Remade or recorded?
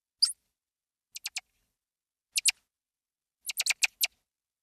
recorded